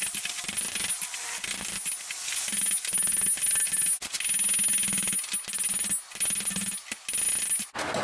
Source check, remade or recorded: recorded